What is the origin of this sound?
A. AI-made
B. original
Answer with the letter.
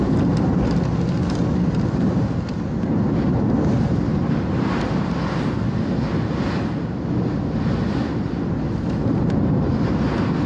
B